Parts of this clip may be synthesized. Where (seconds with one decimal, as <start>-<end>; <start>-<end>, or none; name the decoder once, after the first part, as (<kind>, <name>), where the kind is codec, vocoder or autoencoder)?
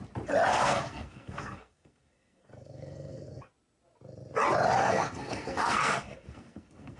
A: 0.5-3.5 (codec, SNAC); 4.8-7.0